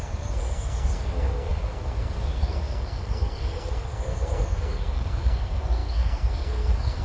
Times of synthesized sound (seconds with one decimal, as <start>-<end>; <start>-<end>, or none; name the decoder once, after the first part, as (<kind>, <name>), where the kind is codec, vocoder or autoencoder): 0.0-7.0 (codec, SNAC)